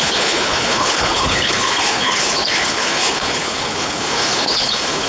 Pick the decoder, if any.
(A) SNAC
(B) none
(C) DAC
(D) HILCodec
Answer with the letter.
D